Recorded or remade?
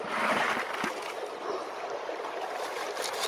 remade